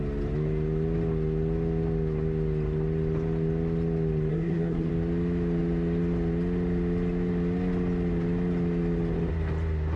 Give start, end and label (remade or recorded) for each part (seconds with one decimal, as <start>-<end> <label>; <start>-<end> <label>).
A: 0.0-4.3 recorded; 4.3-4.9 remade; 4.9-10.0 recorded